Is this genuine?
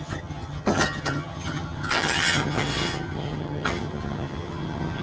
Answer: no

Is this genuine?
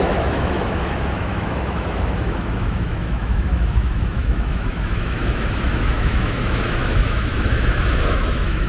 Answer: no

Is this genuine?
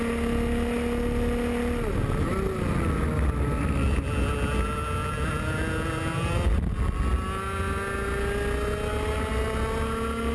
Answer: yes